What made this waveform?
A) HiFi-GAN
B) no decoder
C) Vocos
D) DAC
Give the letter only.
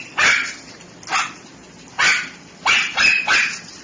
B